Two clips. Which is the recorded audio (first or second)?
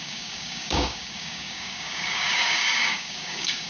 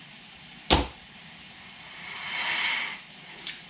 second